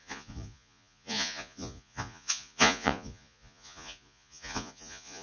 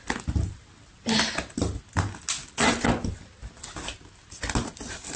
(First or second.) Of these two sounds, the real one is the second